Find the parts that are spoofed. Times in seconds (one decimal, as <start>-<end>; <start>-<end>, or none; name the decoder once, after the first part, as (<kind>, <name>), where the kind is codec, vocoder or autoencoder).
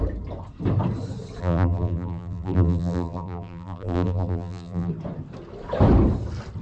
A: 1.4-4.9 (vocoder, BigVGAN v2)